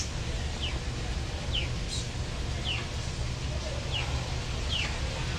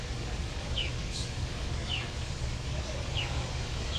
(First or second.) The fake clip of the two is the second